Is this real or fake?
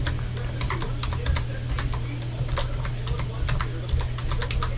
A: real